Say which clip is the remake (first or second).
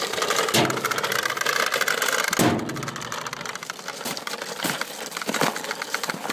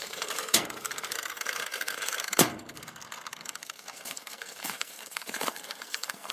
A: second